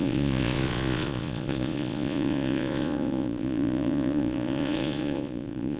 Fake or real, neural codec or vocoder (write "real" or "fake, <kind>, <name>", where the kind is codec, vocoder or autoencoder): fake, vocoder, Vocos